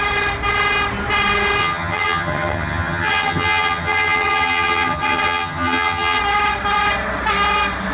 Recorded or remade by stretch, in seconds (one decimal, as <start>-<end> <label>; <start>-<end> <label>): 0.0-1.6 recorded; 1.6-6.2 remade; 6.2-7.9 recorded